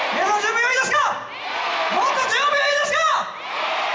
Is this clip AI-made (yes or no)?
no